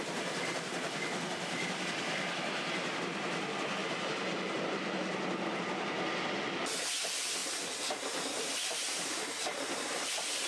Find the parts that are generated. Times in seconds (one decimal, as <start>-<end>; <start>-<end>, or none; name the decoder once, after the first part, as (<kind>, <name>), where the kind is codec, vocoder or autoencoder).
3.8-4.6 (vocoder, BigVGAN v2); 7.4-10.1